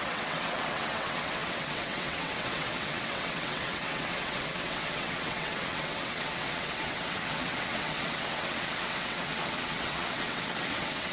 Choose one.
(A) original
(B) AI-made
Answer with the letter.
B